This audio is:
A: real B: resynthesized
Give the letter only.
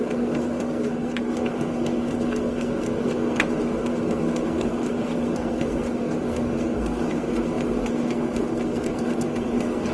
B